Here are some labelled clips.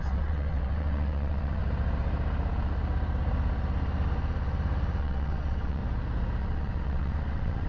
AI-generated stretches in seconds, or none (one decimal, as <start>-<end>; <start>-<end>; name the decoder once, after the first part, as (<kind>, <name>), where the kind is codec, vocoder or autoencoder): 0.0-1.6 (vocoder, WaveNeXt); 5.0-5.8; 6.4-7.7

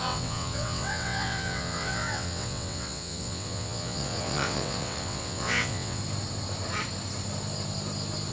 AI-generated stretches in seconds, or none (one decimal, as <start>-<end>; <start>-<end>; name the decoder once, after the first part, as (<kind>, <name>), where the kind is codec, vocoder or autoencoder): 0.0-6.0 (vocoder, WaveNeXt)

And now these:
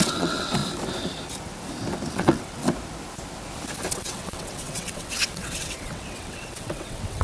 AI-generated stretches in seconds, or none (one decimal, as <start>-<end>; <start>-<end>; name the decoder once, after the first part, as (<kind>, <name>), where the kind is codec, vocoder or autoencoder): 0.0-0.6 (vocoder, WaveNeXt); 2.1-2.6; 3.9-7.2

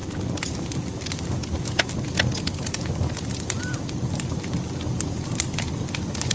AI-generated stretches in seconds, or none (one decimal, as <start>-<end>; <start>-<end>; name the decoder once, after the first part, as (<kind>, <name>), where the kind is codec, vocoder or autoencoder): none